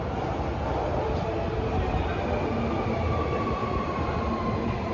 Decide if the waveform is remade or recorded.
recorded